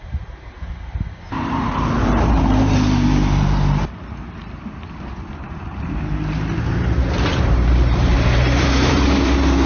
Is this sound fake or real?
fake